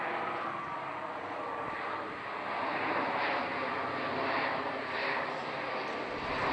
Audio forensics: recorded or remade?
remade